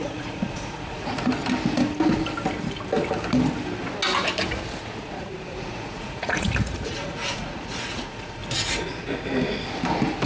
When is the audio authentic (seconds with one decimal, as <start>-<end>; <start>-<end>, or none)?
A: 1.3-4.8; 8.4-10.3